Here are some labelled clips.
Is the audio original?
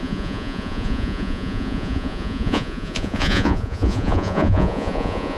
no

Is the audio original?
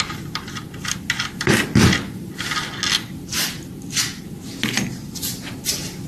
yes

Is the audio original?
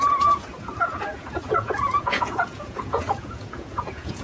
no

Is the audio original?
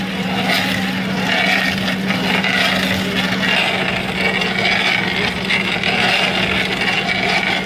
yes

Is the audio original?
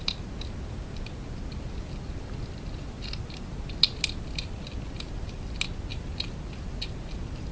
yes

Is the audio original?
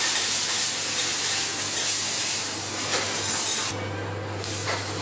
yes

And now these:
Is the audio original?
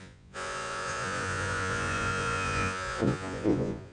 no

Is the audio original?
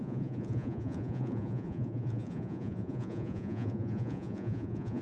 no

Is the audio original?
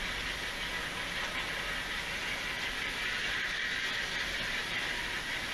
yes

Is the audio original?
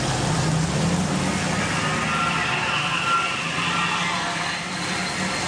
yes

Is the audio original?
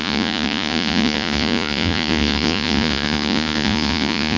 no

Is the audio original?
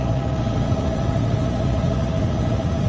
no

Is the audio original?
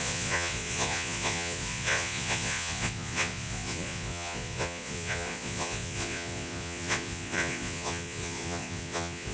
no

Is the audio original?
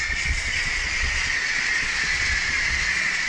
no